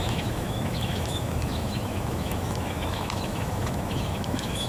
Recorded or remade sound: remade